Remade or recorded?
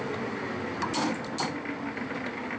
recorded